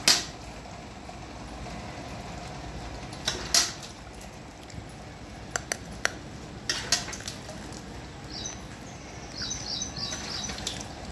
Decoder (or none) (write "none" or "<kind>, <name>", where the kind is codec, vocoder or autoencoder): none